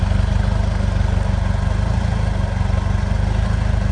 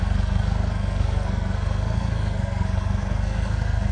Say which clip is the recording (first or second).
first